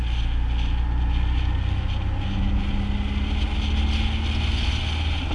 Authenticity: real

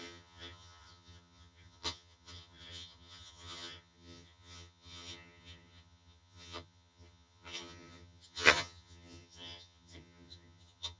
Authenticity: fake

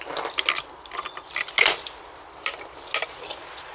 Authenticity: real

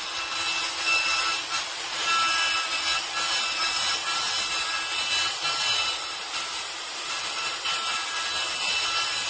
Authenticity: real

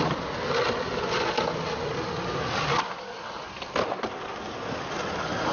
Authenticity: real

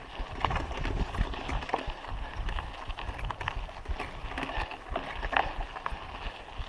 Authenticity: real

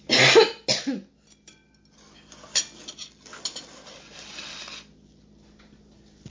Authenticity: real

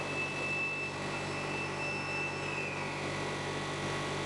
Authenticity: real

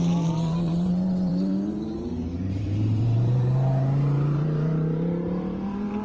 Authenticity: fake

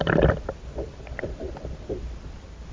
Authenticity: fake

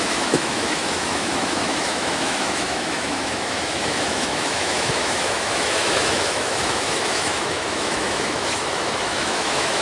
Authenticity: fake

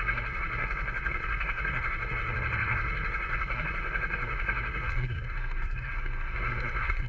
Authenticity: fake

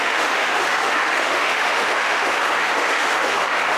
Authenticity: fake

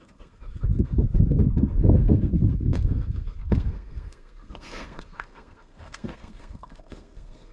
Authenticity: fake